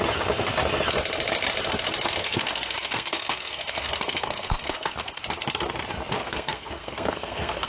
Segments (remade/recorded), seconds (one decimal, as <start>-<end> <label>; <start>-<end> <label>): 0.0-2.2 recorded; 2.2-5.2 remade; 5.2-6.2 recorded; 6.2-7.7 remade